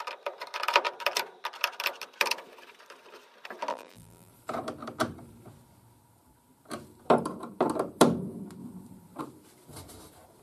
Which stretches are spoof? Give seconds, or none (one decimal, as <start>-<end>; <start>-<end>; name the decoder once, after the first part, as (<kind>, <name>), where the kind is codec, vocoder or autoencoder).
3.7-4.3 (vocoder, BigVGAN v2)

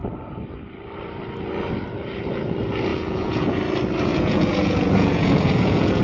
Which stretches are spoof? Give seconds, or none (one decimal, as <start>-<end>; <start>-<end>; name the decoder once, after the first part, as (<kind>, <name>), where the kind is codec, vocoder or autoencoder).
2.9-3.6 (vocoder, Vocos); 4.1-6.0

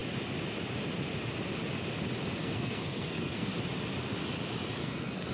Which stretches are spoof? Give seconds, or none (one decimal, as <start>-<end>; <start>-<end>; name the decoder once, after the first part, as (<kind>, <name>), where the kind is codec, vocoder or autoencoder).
2.4-3.5 (codec, SNAC); 4.8-5.3